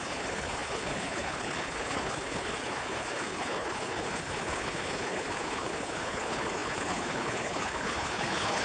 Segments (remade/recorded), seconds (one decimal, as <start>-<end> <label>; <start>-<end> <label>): 0.0-8.6 remade